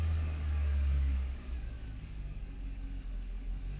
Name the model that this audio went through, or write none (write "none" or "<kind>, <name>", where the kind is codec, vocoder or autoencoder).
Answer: codec, DAC